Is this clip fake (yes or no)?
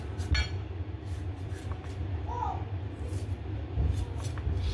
no